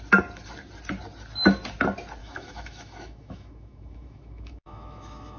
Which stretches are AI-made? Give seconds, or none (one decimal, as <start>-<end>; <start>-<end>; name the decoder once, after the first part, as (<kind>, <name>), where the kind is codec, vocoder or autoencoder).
2.2-5.4 (autoencoder, DAC-VAE)